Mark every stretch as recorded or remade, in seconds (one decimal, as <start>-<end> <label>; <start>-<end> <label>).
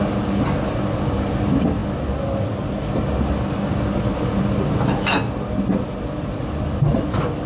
0.0-7.5 recorded